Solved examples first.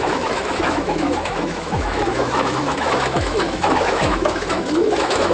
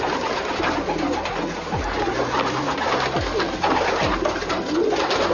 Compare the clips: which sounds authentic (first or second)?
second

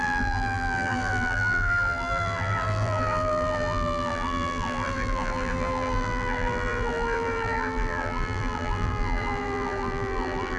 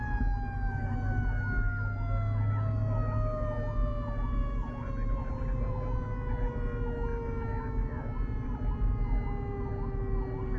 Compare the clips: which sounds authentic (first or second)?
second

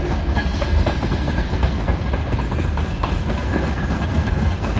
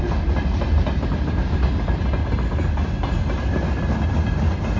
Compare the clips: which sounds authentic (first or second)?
second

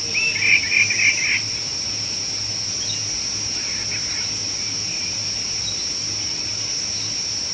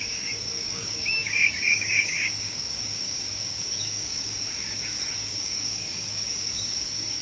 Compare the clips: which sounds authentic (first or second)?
first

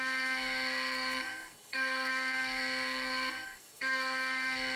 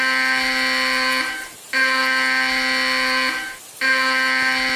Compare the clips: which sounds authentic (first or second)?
second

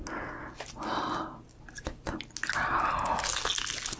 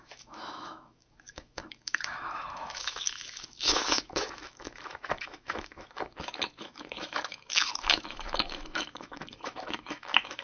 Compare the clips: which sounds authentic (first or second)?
first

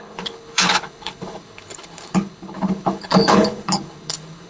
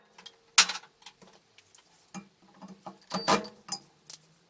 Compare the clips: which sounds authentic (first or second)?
second